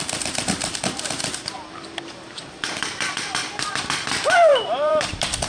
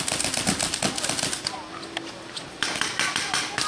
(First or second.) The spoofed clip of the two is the first